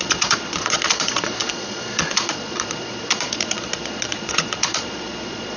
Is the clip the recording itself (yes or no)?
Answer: no